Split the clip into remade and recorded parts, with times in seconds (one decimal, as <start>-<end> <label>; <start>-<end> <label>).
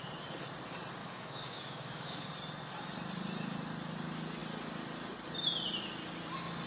0.0-1.0 recorded; 1.0-2.3 remade; 2.3-6.7 recorded